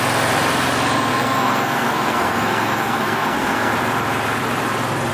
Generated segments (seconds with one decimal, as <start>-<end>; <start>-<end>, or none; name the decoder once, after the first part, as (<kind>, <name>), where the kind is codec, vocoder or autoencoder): 1.1-3.7 (codec, SNAC)